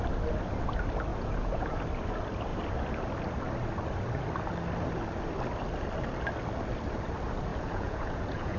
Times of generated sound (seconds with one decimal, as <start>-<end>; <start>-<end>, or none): 1.1-1.8; 7.5-8.6